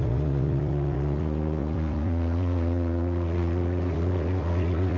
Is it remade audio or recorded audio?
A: remade